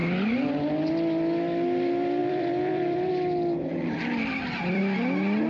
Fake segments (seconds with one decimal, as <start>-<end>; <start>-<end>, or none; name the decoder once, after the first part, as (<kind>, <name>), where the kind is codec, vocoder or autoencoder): 2.2-3.1 (vocoder, BigVGAN v2); 3.7-4.8